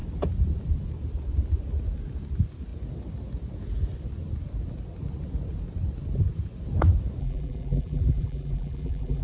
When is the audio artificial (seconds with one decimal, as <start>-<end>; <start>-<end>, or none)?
7.2-9.2